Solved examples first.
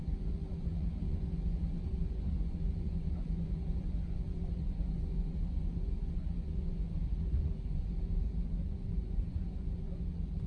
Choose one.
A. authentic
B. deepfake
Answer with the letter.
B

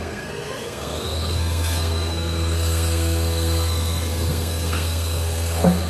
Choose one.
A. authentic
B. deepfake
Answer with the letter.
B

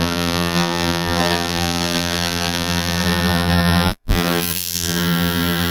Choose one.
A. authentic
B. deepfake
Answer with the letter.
B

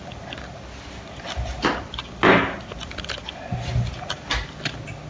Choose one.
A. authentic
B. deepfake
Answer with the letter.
A